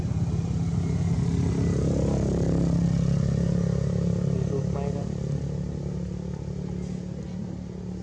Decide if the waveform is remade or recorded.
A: recorded